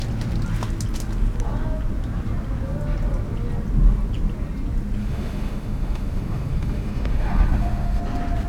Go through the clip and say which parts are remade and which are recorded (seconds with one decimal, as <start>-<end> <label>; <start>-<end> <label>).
0.0-5.0 recorded; 5.0-8.0 remade; 8.0-8.5 recorded